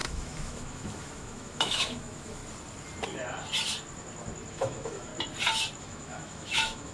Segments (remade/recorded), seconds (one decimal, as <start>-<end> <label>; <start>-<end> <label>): 0.0-2.4 remade; 2.4-4.5 recorded; 4.5-5.1 remade; 5.1-5.8 recorded; 5.8-6.9 remade